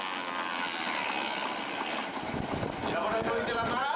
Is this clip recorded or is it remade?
recorded